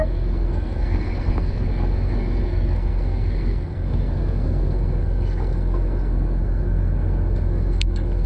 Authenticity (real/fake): fake